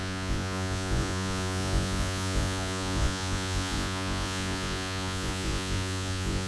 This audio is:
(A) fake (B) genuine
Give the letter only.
A